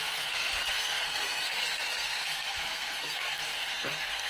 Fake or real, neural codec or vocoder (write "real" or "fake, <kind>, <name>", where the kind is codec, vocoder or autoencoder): fake, codec, SNAC